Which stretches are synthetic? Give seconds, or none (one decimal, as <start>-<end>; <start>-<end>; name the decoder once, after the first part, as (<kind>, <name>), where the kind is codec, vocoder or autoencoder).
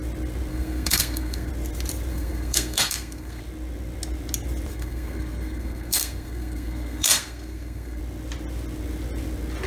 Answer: 0.5-1.5 (codec, SNAC); 2.1-3.4; 4.7-8.0